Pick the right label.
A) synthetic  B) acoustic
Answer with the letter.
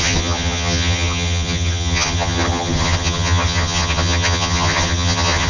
A